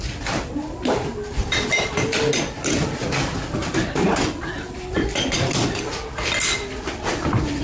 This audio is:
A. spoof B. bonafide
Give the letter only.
B